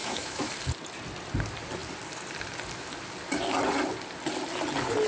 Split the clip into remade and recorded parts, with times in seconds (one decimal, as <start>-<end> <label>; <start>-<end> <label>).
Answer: 0.0-0.5 remade; 0.5-5.1 recorded